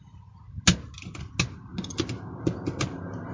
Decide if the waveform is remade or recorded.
recorded